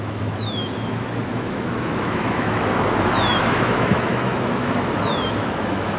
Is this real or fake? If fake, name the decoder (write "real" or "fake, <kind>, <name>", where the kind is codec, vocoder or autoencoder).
fake, autoencoder, DAC-VAE